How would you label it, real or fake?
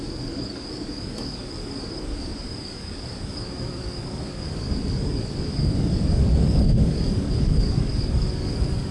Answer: fake